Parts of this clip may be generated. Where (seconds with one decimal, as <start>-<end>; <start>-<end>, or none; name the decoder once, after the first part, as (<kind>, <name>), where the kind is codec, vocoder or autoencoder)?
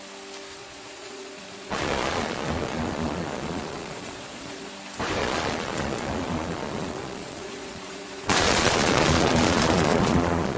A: 0.6-4.7 (vocoder, Vocos); 5.2-10.6